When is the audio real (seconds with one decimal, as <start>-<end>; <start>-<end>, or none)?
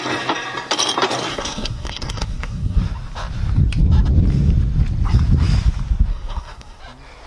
0.0-1.3; 2.8-6.1; 6.8-7.3